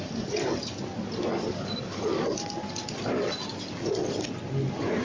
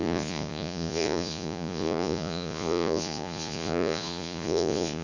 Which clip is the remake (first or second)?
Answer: second